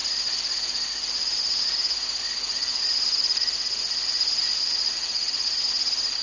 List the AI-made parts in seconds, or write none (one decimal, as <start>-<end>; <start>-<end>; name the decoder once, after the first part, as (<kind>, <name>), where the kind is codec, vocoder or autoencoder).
2.7-5.7 (vocoder, BigVGAN v2)